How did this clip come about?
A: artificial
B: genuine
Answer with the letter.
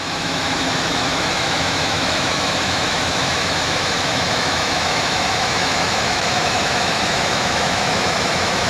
A